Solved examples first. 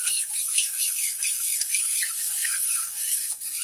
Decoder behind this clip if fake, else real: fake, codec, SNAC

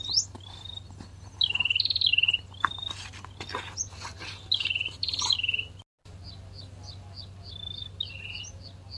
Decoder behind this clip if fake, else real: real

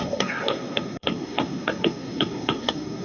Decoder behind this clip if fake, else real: fake, codec, SNAC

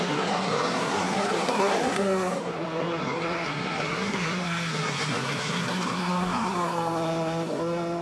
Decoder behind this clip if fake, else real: fake, codec, SNAC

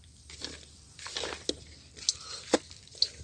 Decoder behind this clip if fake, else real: real